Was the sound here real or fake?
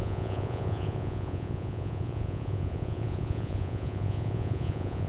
fake